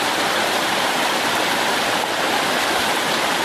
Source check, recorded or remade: recorded